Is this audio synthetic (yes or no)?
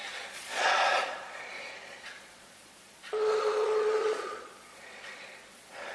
yes